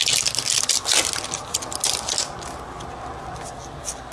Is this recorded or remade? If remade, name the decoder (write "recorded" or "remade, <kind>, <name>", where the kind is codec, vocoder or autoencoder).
remade, vocoder, BigVGAN v2